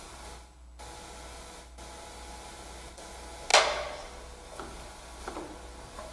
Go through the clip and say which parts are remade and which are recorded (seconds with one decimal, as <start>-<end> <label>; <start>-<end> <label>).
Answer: 0.0-6.1 recorded